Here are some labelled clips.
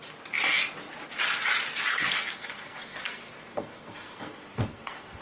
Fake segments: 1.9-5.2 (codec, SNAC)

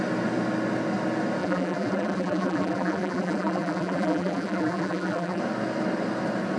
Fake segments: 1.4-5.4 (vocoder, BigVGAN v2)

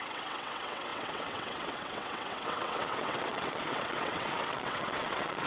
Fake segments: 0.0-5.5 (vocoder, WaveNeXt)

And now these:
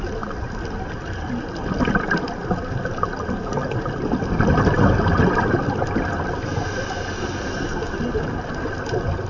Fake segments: none

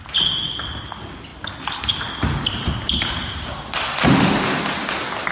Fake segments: none

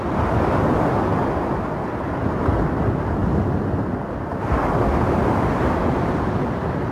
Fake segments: none